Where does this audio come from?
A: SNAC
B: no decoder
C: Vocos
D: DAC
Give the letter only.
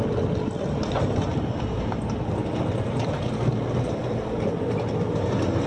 B